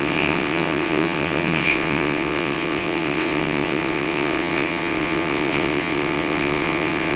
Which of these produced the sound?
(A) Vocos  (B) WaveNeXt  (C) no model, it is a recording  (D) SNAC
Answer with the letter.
B